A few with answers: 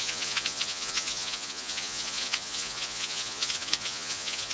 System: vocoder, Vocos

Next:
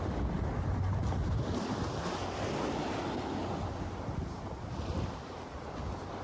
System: none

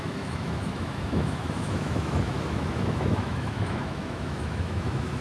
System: autoencoder, DAC-VAE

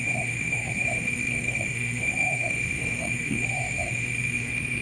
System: autoencoder, DAC-VAE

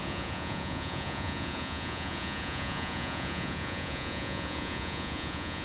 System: vocoder, Vocos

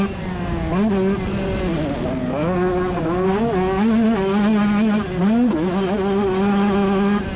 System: none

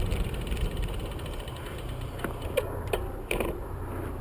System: vocoder, BigVGAN v2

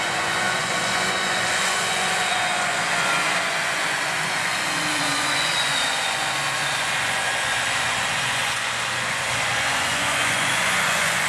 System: vocoder, Vocos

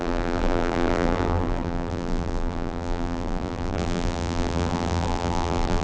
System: vocoder, BigVGAN v2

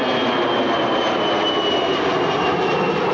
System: none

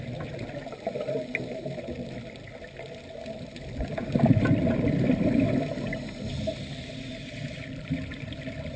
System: none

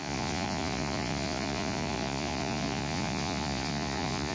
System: vocoder, Vocos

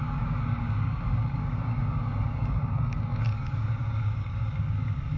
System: codec, DAC